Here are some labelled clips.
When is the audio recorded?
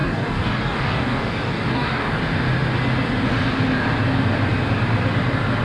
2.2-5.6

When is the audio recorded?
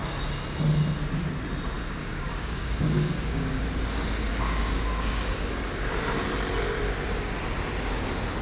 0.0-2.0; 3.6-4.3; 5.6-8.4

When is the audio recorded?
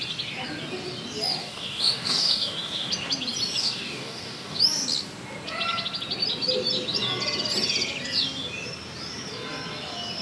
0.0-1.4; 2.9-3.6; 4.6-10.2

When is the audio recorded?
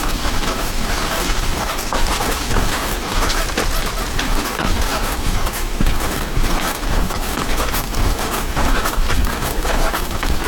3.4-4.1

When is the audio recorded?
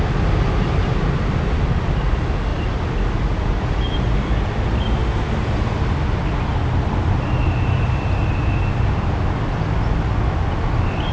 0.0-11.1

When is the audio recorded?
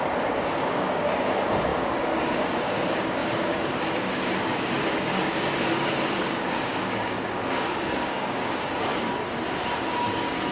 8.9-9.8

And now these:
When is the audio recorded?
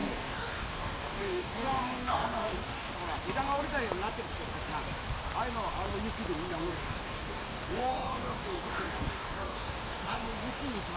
2.9-6.6; 10.6-11.0